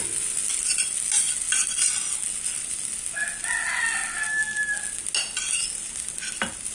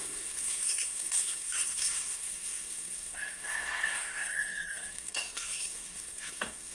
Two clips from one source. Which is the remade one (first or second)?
second